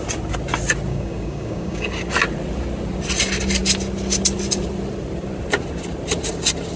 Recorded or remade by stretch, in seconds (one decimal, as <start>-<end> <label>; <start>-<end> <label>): 0.0-0.9 recorded; 0.9-1.9 remade; 1.9-6.8 recorded